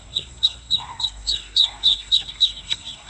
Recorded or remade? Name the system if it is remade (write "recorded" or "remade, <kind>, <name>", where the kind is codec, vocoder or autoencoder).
remade, codec, SNAC